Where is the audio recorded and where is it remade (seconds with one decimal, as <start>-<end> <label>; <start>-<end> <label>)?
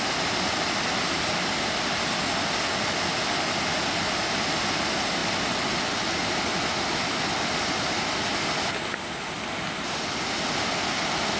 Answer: 0.0-11.4 recorded